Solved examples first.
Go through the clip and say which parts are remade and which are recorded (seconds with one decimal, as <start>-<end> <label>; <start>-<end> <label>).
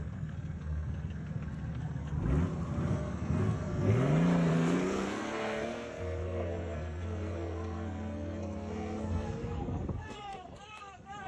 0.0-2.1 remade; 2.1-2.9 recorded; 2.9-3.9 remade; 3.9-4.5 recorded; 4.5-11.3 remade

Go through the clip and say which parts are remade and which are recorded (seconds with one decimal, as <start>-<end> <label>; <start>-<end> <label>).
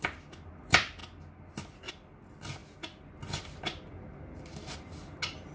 0.0-5.5 recorded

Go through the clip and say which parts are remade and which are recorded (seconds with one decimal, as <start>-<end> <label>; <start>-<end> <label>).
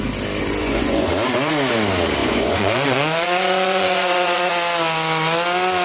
0.0-0.6 recorded; 0.6-1.1 remade; 1.1-2.2 recorded; 2.2-4.5 remade; 4.5-5.8 recorded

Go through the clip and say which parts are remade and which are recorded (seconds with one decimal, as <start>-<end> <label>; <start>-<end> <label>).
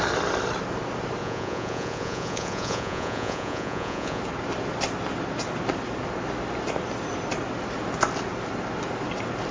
0.0-1.2 recorded; 1.2-4.2 remade; 4.2-9.5 recorded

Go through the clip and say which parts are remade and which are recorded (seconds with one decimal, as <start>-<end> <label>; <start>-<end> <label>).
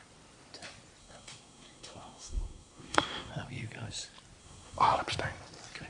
0.0-1.0 recorded; 1.0-3.3 remade; 3.3-4.4 recorded; 4.4-5.0 remade; 5.0-5.9 recorded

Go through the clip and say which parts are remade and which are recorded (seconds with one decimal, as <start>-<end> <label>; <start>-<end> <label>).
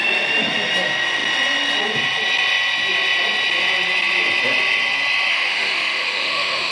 0.0-5.3 recorded; 5.3-6.7 remade